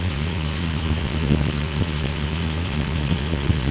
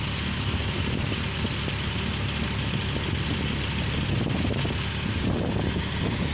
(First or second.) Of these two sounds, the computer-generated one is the first